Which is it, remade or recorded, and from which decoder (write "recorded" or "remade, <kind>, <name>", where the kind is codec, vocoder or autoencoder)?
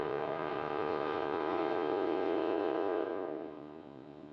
remade, vocoder, Vocos